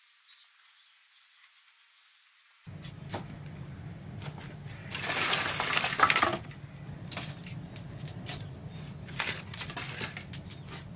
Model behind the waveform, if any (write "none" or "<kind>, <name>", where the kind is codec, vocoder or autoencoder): none